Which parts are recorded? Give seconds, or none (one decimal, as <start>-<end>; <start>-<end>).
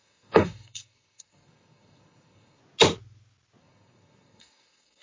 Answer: 2.6-3.6